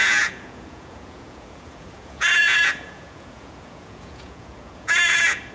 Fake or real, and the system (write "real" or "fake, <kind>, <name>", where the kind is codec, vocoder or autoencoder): fake, vocoder, Vocos